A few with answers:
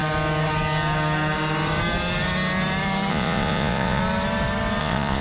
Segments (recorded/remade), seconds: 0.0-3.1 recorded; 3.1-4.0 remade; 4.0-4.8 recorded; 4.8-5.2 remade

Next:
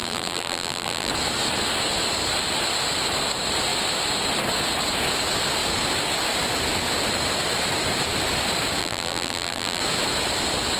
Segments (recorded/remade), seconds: 0.0-1.1 remade; 1.1-8.8 recorded; 8.8-9.8 remade; 9.8-10.8 recorded